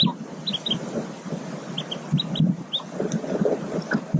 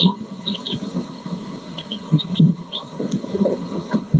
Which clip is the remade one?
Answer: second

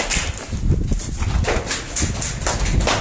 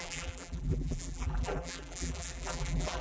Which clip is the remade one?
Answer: second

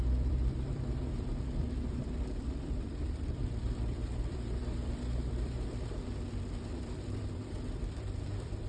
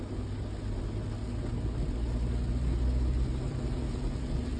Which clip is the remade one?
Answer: first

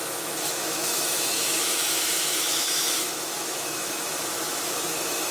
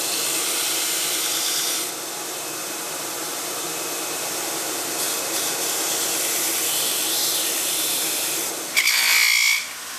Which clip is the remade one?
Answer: first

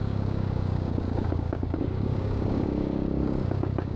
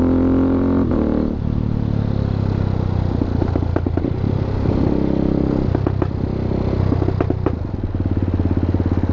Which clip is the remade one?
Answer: first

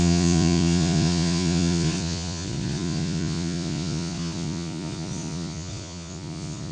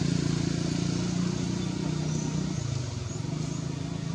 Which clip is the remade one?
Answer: first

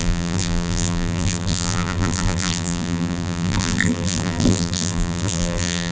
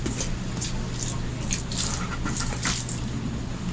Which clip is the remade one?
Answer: first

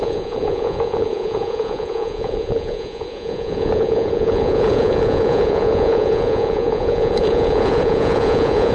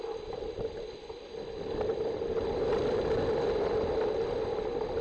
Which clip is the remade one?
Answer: first